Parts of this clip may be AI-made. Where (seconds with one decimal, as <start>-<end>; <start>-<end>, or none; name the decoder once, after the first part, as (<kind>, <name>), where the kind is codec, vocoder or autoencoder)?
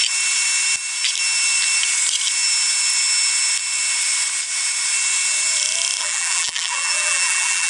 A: 6.0-7.7 (vocoder, BigVGAN v2)